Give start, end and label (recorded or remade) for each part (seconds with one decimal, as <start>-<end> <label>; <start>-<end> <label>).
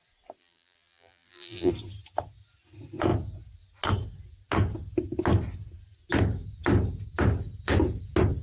0.0-0.4 recorded; 0.4-1.7 remade; 1.7-8.4 recorded